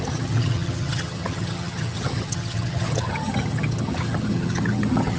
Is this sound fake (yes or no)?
yes